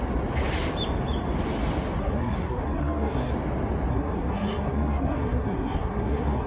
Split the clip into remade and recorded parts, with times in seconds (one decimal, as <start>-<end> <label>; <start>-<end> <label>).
0.0-2.0 recorded; 2.0-3.3 remade; 3.3-3.9 recorded; 3.9-6.5 remade